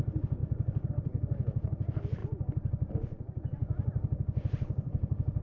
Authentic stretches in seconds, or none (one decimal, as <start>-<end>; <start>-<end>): 0.0-5.4

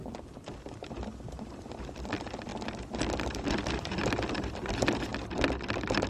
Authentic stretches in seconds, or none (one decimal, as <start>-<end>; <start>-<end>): 0.0-2.5; 4.5-6.1

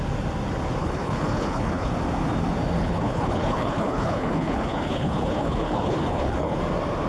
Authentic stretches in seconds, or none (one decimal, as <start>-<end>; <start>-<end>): 0.0-0.8; 1.9-2.8; 6.6-7.1

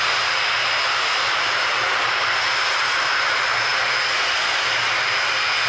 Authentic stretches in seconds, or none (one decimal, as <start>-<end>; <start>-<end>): 0.0-5.7

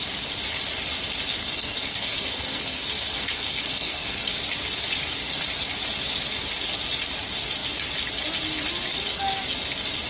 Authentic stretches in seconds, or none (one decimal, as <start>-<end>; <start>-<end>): 0.0-1.4; 4.3-10.1

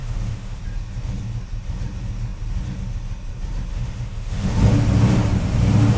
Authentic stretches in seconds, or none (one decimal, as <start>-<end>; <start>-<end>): 0.6-3.7; 4.6-6.0